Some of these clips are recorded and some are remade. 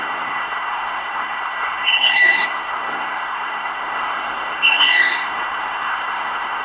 remade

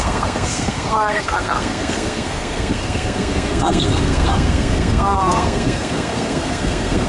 remade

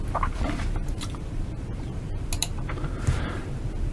recorded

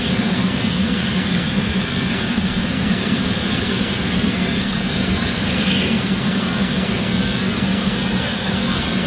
remade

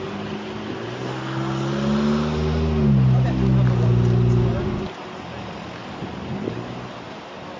recorded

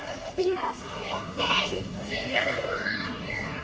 remade